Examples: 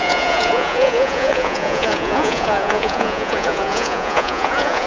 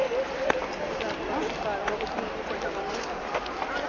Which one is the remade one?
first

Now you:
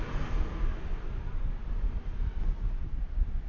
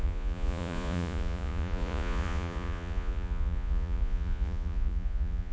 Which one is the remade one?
second